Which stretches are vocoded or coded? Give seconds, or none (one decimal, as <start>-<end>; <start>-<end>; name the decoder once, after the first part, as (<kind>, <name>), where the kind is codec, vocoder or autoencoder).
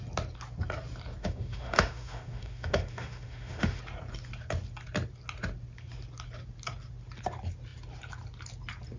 1.2-3.8 (autoencoder, DAC-VAE)